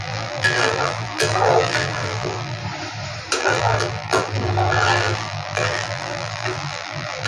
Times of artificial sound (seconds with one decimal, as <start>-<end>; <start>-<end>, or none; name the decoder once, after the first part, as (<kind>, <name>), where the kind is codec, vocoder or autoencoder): 0.0-2.6 (vocoder, BigVGAN v2); 3.4-7.3